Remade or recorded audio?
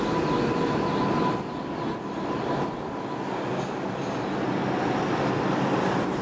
recorded